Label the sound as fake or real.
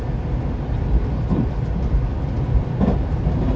real